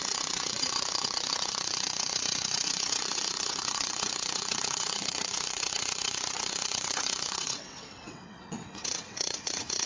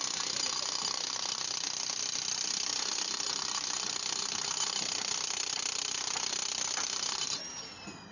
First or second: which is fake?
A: first